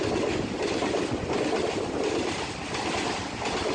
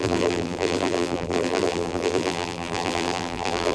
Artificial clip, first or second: second